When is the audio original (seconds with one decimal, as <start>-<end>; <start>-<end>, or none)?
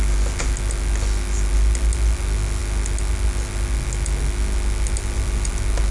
0.0-5.9